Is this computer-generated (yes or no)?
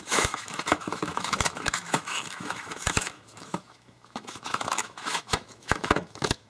yes